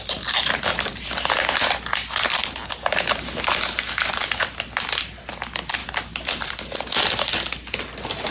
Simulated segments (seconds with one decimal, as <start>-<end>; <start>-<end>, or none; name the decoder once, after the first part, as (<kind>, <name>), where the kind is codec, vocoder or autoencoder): 0.7-1.5 (vocoder, BigVGAN v2); 5.8-6.5